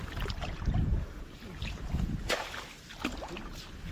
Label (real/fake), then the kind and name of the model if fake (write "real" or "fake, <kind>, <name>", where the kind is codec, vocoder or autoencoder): real